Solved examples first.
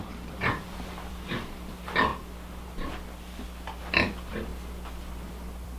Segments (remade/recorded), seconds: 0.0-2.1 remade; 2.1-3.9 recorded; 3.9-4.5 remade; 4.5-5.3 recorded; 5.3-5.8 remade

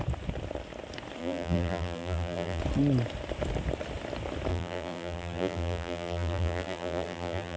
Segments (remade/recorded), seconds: 0.0-1.2 recorded; 1.2-2.6 remade; 2.6-4.5 recorded; 4.5-7.6 remade

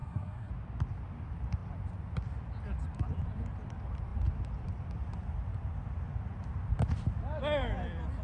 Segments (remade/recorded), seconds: 0.0-0.5 remade; 0.5-8.2 recorded

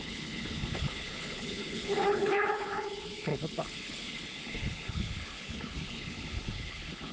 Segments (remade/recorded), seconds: 0.0-7.1 remade

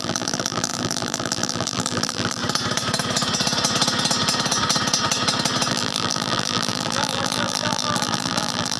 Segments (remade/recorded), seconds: 0.0-2.4 remade; 2.4-5.7 recorded; 5.7-8.8 remade

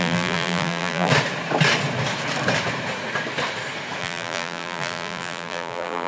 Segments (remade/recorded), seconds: 0.0-1.1 remade; 1.1-4.0 recorded; 4.0-6.1 remade

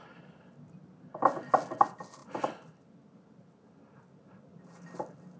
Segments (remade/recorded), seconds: 0.0-5.4 recorded